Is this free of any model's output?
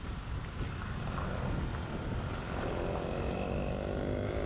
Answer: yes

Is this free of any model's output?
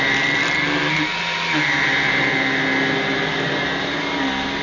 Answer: yes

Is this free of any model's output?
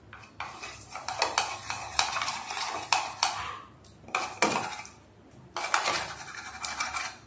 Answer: yes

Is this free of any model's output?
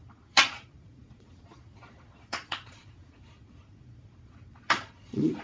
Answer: no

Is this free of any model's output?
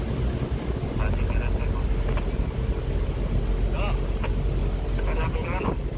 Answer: yes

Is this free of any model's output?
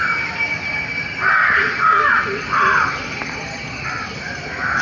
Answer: yes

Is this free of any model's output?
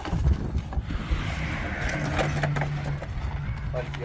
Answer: yes